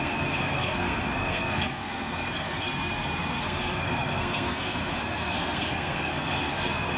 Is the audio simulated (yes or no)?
yes